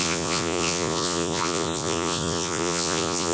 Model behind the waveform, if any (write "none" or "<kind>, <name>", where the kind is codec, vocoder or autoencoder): vocoder, Vocos